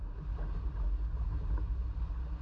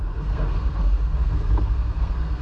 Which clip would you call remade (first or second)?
second